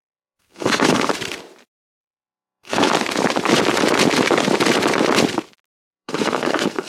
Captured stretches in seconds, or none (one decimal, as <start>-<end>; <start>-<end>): 1.1-2.0; 2.9-5.9